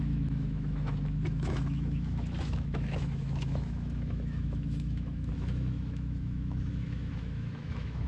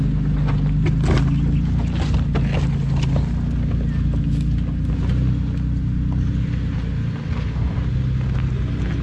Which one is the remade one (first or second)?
first